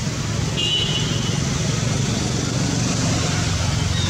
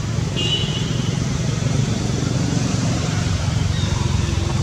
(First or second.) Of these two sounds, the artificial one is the second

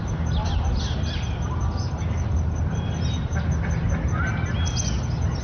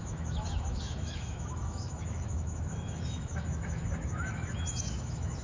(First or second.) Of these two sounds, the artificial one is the second